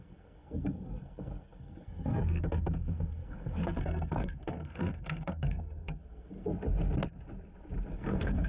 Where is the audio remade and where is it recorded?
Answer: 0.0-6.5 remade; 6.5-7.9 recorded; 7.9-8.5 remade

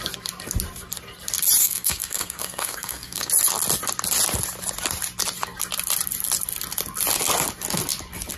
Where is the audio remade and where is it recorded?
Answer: 0.0-1.6 recorded; 1.6-3.3 remade; 3.3-8.4 recorded

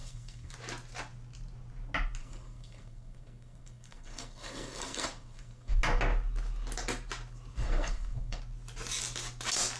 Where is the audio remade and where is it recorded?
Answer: 0.0-0.5 remade; 0.5-2.2 recorded; 2.2-5.8 remade; 5.8-7.5 recorded; 7.5-8.4 remade; 8.4-9.8 recorded

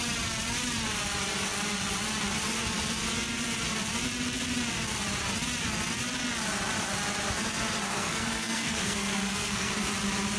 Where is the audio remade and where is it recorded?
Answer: 0.0-7.9 recorded; 7.9-9.7 remade; 9.7-10.4 recorded

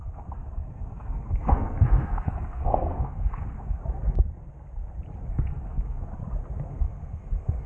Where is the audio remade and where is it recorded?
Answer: 0.0-3.8 remade; 3.8-5.3 recorded; 5.3-6.1 remade; 6.1-6.7 recorded; 6.7-7.7 remade